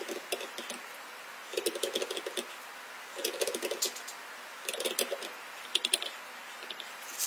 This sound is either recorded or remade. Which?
recorded